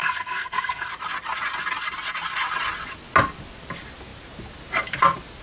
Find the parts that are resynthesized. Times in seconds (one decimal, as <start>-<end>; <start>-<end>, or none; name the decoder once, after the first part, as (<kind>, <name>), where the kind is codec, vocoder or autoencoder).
0.0-0.9 (codec, SNAC)

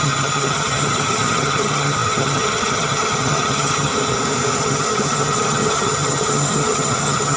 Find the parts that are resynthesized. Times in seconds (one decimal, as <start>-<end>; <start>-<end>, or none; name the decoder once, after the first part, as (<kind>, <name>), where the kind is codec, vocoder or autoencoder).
0.0-3.9 (vocoder, HiFi-GAN); 4.6-7.4

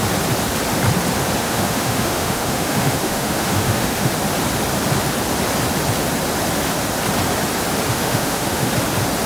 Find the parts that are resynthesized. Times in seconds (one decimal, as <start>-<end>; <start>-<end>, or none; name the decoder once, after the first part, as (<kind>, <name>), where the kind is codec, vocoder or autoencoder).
1.4-4.1 (autoencoder, DAC-VAE); 7.9-8.7

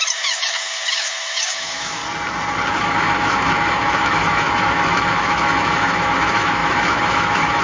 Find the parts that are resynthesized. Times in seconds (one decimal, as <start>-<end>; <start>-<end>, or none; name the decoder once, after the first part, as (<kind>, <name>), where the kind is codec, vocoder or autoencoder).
0.0-2.0 (autoencoder, DAC-VAE); 2.7-7.6

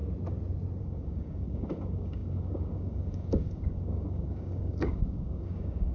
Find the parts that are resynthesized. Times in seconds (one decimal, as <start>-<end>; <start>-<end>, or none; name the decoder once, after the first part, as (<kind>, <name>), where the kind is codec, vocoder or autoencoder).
0.8-5.9 (codec, DAC)

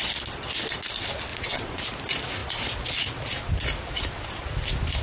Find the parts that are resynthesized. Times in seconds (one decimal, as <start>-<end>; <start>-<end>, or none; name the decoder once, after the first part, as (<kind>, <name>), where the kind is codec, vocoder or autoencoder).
1.3-1.8 (vocoder, WaveNeXt)